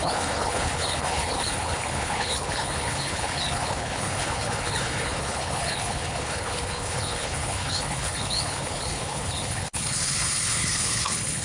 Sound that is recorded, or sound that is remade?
remade